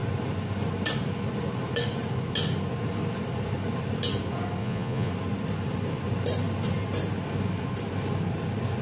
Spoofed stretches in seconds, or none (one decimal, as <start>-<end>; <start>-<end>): 4.6-5.1